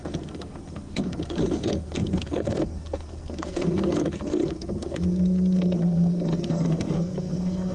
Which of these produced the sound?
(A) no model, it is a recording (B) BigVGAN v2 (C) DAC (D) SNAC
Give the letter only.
D